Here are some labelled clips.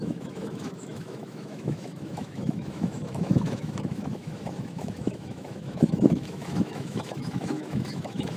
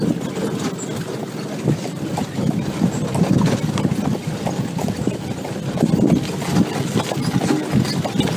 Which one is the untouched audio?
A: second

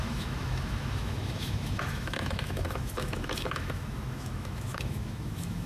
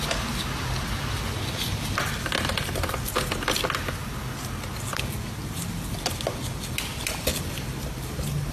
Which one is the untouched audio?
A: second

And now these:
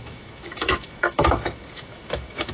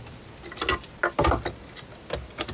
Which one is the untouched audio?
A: second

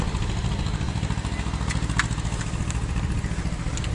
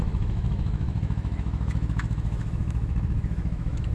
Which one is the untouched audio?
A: first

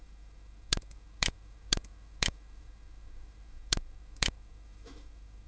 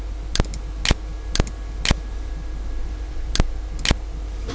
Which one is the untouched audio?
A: second